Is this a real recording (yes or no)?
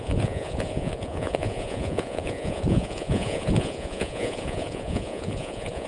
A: no